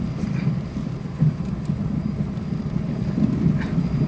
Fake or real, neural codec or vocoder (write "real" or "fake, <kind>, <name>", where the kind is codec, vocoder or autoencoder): real